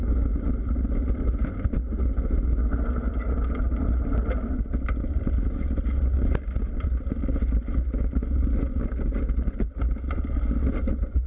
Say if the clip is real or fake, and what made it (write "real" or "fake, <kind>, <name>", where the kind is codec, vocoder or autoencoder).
real